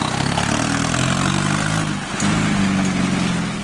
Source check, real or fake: real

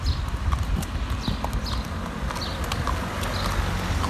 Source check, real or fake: real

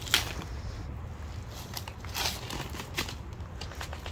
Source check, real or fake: real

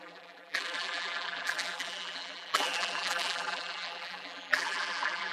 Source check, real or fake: fake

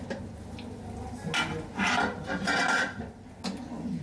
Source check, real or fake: real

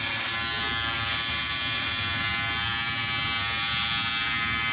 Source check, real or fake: real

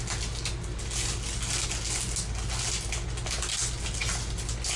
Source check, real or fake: real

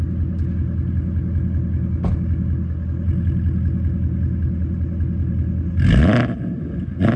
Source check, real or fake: real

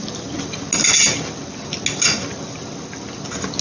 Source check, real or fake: real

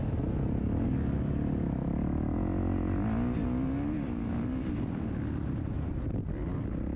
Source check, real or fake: real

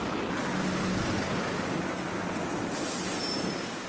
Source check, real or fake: real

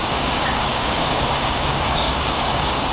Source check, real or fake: fake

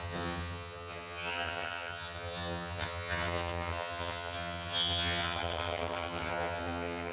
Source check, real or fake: fake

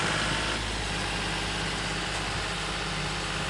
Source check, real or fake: real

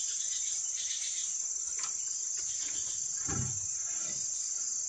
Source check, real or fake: real